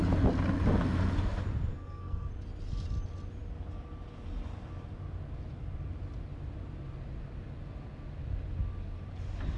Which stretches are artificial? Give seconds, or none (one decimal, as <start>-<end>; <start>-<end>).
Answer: 1.7-2.3